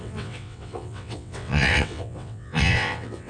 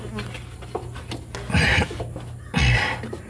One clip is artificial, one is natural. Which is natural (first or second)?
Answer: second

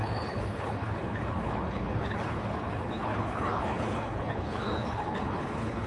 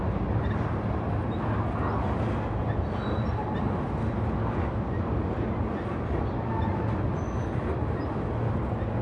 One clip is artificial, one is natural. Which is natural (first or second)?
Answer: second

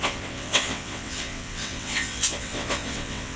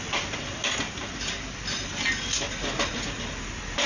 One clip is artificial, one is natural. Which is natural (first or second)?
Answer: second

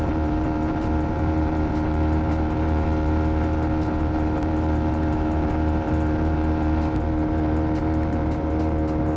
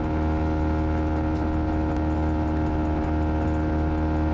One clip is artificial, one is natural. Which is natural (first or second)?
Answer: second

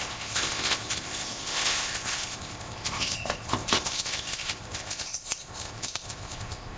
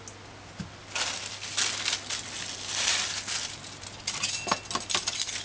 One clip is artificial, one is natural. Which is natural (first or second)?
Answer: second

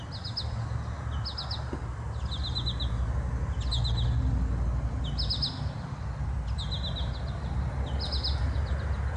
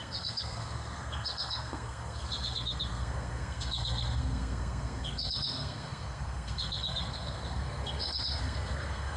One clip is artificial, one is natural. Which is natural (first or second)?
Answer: first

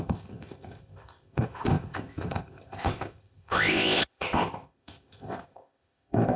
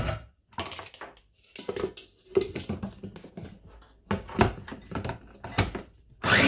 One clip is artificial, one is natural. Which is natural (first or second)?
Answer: second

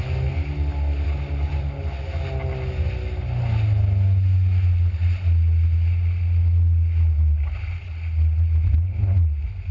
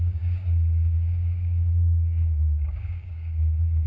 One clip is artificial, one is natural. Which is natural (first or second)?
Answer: first